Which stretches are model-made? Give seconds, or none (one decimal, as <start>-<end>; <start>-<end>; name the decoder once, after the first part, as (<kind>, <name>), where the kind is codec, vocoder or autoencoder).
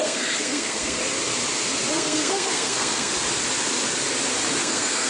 0.0-1.0 (codec, SNAC); 1.9-3.1; 4.6-5.1